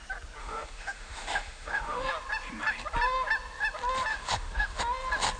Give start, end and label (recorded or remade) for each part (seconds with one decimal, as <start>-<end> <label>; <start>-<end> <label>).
0.0-0.4 recorded; 0.4-2.1 remade; 2.1-4.1 recorded; 4.1-4.8 remade; 4.8-5.4 recorded